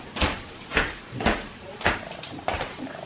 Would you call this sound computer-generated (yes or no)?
yes